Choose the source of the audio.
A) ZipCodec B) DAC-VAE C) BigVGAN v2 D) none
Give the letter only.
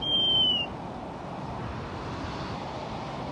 C